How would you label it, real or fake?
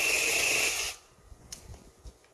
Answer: fake